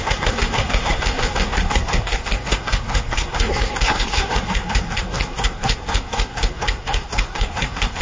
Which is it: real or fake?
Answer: fake